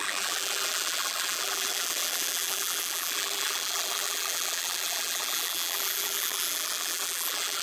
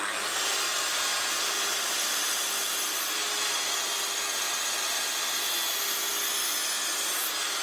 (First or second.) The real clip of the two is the second